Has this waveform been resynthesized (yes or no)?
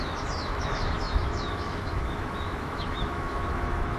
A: yes